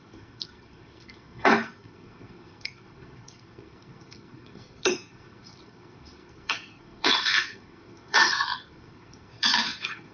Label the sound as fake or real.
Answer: fake